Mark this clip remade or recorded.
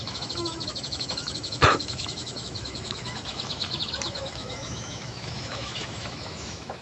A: remade